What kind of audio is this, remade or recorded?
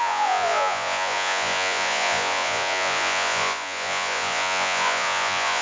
remade